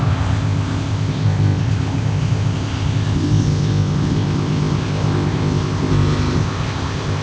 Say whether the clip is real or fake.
fake